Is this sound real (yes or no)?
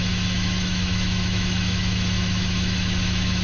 no